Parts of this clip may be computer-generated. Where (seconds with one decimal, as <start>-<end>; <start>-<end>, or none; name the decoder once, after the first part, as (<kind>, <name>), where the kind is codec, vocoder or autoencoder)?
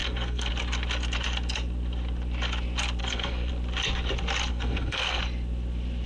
0.0-0.5 (codec, SNAC); 3.0-3.5; 4.5-5.2